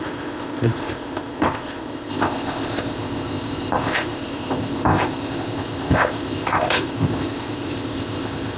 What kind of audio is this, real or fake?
fake